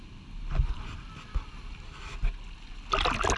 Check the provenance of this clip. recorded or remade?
recorded